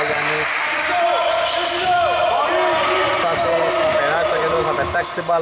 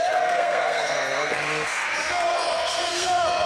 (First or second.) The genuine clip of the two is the first